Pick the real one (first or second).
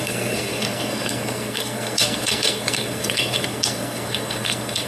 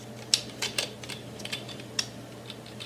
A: second